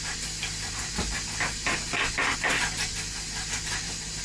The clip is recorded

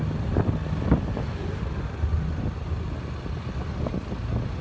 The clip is recorded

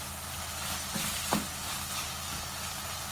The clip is recorded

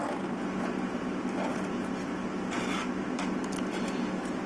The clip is recorded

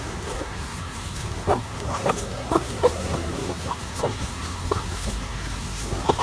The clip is remade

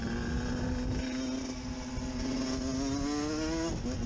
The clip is recorded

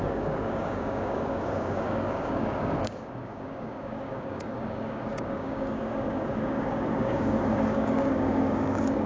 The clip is remade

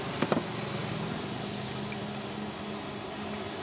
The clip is recorded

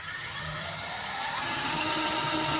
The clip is remade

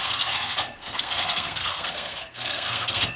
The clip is remade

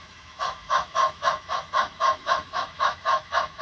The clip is remade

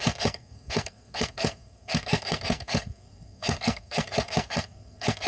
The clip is remade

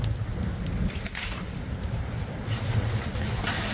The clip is remade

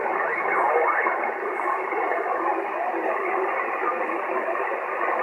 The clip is recorded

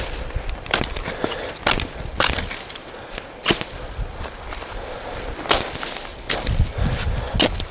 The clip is recorded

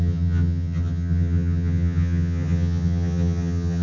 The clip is remade